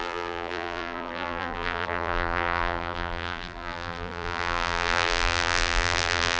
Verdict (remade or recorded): remade